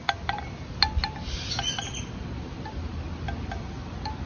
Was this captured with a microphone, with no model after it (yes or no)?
yes